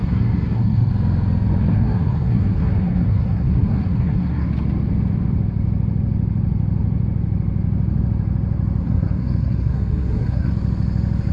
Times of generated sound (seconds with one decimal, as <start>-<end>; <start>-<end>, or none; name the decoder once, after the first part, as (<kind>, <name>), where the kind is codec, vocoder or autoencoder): 0.0-0.9 (codec, SNAC); 1.7-4.5; 8.8-10.5